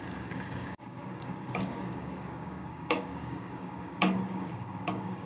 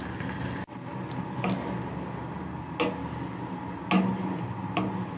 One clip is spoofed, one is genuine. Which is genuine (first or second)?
second